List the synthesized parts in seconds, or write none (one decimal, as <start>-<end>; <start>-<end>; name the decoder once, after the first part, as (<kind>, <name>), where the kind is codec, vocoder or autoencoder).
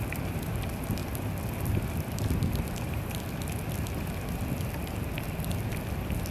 none